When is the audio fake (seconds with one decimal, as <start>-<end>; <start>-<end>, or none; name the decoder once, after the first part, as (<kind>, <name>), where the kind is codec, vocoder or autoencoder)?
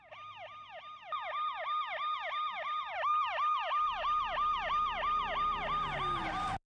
none